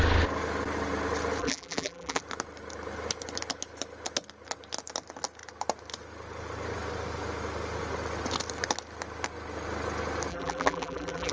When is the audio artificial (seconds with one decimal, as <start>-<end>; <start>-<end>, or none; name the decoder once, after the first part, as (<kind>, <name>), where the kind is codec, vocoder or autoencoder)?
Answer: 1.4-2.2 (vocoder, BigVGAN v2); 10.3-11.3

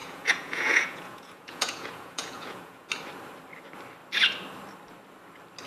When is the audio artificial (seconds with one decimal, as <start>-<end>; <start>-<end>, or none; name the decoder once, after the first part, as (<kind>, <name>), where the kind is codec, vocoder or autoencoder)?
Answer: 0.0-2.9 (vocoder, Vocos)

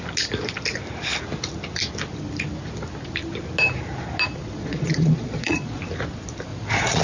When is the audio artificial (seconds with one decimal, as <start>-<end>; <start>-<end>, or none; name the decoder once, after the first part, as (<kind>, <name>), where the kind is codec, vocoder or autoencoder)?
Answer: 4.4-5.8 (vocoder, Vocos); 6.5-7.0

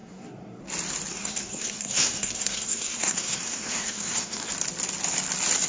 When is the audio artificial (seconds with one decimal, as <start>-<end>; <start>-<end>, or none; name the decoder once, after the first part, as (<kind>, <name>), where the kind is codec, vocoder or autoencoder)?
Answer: 0.0-0.6 (codec, SNAC); 1.1-4.5